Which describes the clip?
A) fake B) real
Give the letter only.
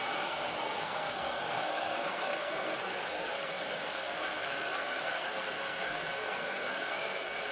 A